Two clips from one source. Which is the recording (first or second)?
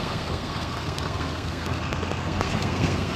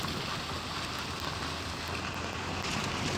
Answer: second